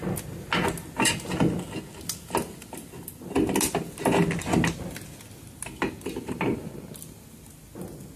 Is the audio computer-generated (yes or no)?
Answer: no